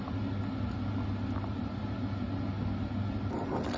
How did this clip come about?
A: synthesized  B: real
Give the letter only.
B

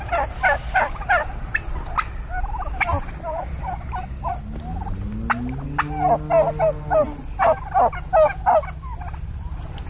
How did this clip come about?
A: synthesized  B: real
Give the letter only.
B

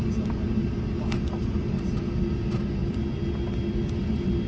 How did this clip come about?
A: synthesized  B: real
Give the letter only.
B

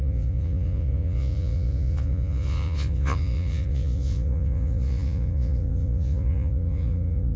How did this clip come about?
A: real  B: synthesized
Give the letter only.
B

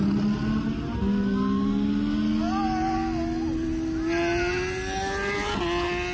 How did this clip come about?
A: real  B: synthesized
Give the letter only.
A